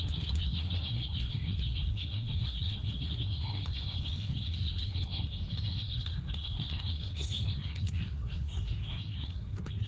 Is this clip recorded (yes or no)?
no